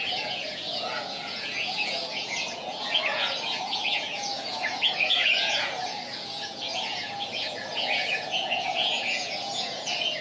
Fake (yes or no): yes